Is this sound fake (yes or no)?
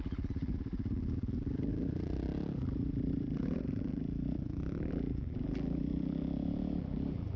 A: yes